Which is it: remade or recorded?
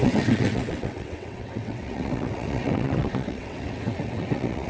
remade